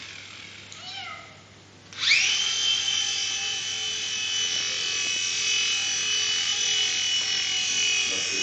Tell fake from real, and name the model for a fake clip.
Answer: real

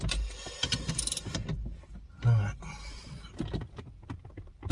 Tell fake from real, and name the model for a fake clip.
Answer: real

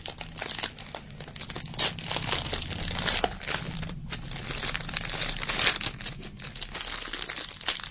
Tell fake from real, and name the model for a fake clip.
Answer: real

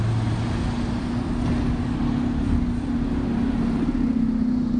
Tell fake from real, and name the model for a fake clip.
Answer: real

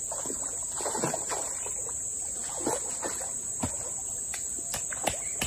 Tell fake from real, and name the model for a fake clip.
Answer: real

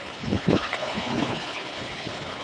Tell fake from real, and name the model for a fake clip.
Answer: fake, codec, HILCodec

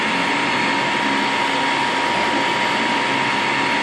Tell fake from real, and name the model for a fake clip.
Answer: real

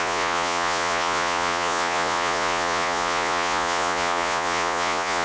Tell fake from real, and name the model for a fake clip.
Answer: fake, vocoder, Vocos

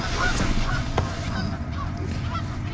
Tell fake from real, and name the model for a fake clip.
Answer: fake, vocoder, Vocos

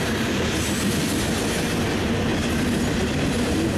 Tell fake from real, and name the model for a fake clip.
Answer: real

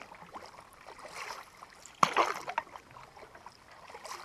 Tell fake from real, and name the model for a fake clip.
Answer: real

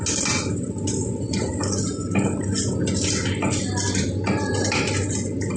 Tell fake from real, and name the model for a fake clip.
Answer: real